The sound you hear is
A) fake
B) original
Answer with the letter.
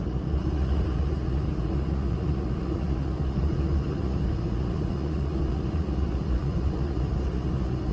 A